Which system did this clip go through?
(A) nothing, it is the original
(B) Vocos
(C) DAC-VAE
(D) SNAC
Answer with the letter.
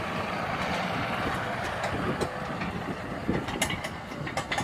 A